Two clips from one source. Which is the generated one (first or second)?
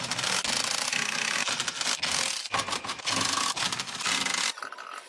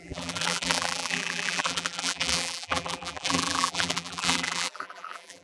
second